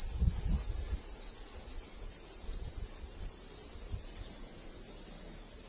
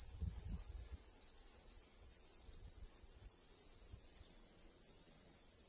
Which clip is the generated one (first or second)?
second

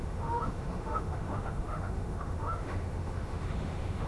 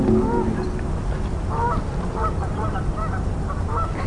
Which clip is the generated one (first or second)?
first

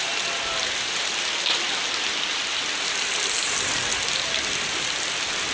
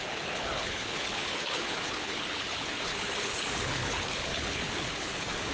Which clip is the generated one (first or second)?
second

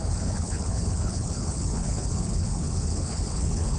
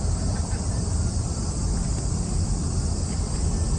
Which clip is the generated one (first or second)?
first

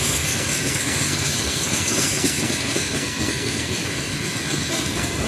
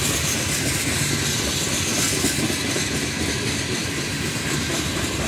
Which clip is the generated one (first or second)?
first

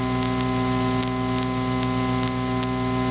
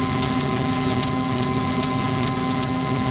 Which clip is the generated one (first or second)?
second